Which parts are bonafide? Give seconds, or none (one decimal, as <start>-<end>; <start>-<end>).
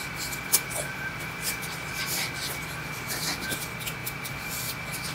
0.0-4.0; 4.5-5.1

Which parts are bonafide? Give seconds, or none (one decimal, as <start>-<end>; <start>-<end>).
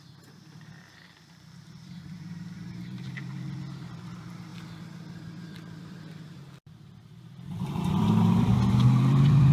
4.5-5.2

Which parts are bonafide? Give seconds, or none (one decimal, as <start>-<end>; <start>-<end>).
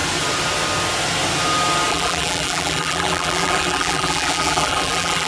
0.0-1.9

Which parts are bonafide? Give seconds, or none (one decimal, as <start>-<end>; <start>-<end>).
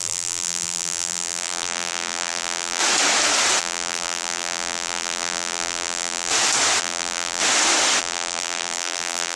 2.8-3.6; 6.3-6.8; 7.4-8.0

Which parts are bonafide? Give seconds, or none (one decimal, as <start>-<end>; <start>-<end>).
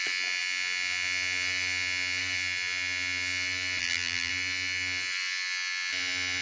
0.0-3.8; 4.3-6.4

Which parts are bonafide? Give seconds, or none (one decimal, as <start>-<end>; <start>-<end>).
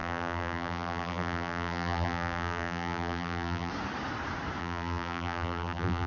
3.7-4.6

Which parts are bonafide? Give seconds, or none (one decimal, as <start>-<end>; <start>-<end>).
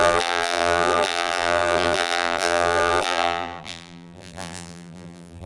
none